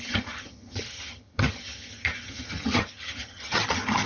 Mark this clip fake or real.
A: fake